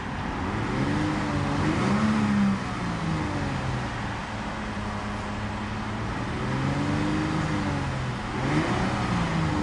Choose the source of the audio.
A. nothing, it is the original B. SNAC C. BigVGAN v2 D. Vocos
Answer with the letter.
A